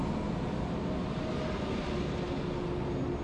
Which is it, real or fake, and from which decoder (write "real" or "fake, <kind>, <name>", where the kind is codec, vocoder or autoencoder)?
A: real